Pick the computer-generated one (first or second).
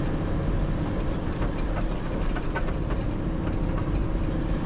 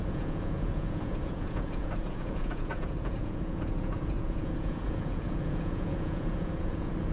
second